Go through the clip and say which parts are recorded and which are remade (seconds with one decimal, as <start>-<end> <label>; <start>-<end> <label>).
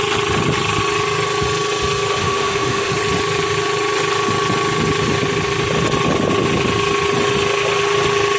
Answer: 0.0-2.2 recorded; 2.2-2.9 remade; 2.9-8.4 recorded